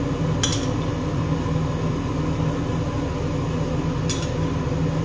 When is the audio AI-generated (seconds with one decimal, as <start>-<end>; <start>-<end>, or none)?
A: none

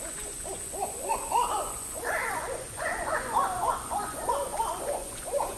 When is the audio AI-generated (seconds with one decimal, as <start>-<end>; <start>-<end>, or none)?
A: 0.0-5.6

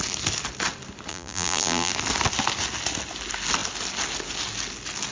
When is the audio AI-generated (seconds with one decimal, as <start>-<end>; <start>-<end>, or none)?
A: 1.1-1.9